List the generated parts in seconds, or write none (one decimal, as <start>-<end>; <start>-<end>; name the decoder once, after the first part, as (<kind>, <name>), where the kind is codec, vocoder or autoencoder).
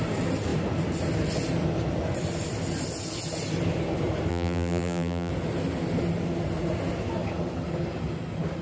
4.3-5.3 (vocoder, BigVGAN v2)